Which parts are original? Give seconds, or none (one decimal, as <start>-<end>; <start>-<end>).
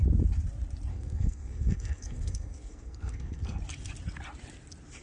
0.0-0.9; 3.6-5.0